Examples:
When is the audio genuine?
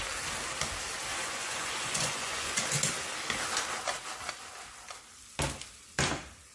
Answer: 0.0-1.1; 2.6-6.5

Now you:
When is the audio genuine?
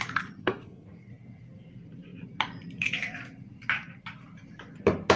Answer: 0.0-0.4; 1.1-5.2